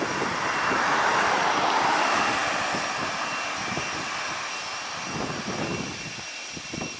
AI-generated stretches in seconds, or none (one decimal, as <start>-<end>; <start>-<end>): none